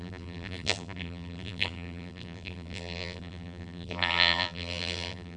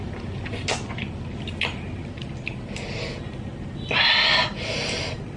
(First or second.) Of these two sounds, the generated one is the first